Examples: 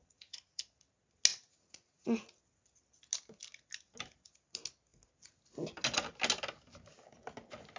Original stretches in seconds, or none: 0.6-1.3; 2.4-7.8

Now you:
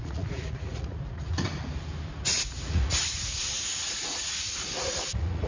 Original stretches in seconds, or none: 1.5-2.1

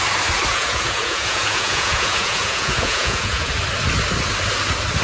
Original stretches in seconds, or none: 0.0-0.5; 3.5-5.0

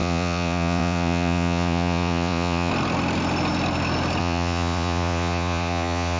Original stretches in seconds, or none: 2.7-4.2

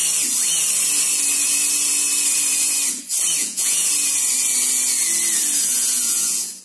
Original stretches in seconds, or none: 0.0-3.4; 3.9-5.7